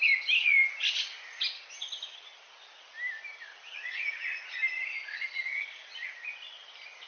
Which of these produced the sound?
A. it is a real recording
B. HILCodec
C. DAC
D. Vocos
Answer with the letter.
A